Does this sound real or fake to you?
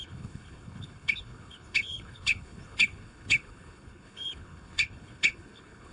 fake